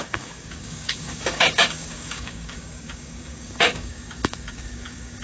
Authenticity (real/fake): fake